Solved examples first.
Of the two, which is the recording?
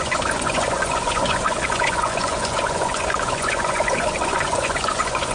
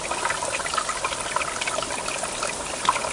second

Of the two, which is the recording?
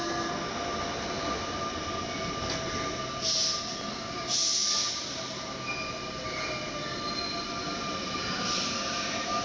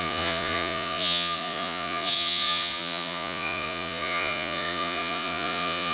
first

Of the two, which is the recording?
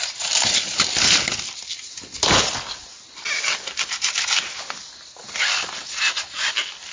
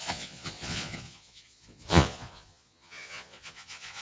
first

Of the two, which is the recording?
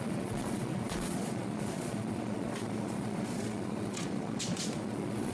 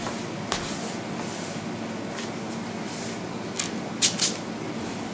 second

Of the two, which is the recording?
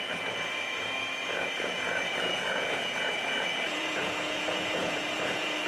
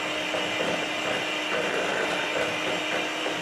second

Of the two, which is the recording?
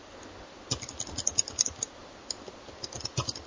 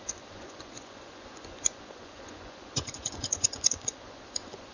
first